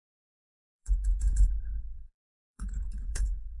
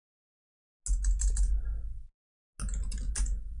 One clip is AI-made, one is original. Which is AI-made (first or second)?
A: first